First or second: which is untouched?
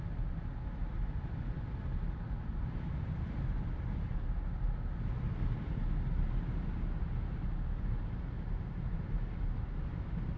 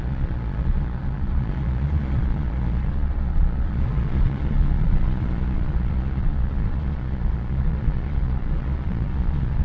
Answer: first